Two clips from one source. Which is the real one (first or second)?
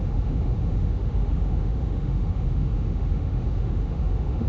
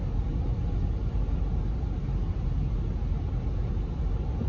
second